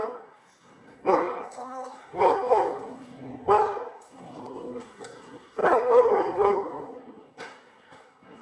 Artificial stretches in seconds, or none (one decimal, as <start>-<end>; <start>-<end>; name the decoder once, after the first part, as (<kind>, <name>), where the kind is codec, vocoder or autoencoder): 0.0-8.4 (codec, SNAC)